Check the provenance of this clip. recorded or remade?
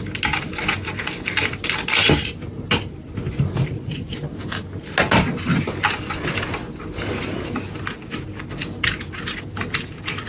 recorded